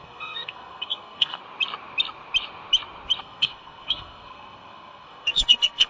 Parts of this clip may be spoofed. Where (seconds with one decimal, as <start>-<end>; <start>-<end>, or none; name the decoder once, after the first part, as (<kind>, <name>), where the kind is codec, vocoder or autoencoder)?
0.0-1.4 (codec, SNAC); 3.2-5.9